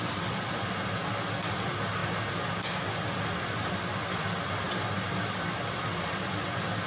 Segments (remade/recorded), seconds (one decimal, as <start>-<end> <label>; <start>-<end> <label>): 0.0-2.0 remade; 2.0-3.4 recorded; 3.4-6.9 remade